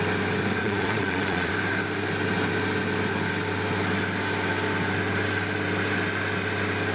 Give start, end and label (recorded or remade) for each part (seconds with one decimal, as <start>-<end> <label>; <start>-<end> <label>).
0.0-0.6 recorded; 0.6-1.5 remade; 1.5-6.9 recorded